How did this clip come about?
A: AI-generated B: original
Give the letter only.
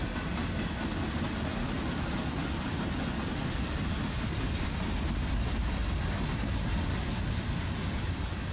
B